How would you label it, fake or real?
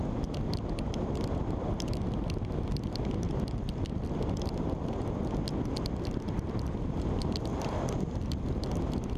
real